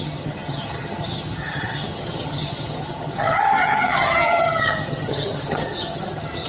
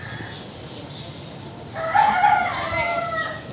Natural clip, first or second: second